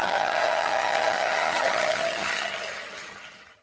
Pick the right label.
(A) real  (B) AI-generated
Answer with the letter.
B